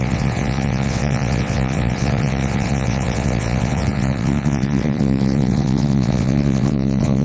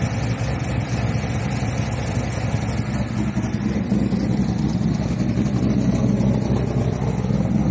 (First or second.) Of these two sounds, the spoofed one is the first